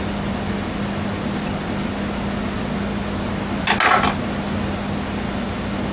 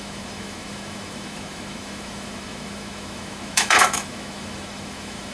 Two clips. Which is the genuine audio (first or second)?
first